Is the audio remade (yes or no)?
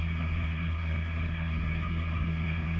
yes